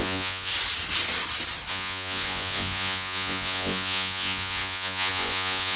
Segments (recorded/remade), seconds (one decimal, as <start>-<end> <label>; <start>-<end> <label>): 0.0-0.5 remade; 0.5-1.7 recorded; 1.7-5.8 remade